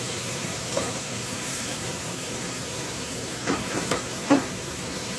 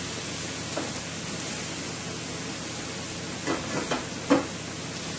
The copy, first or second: first